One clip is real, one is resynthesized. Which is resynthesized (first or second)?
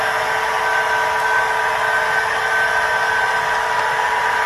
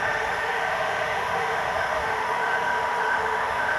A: second